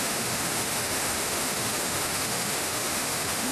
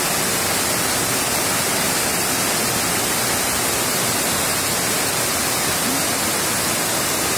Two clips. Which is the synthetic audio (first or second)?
first